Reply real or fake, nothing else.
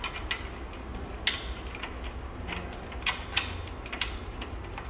real